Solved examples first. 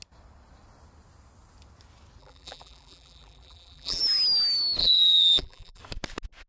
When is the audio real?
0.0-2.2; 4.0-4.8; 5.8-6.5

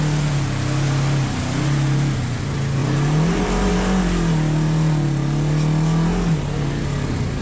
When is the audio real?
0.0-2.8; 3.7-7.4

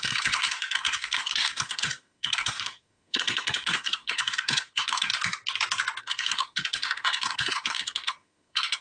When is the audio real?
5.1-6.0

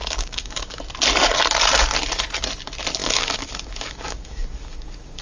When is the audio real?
0.8-3.0